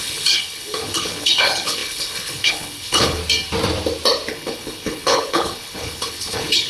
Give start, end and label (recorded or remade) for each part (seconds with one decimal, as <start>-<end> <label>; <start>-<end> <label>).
0.0-3.2 remade; 3.2-4.3 recorded; 4.3-6.7 remade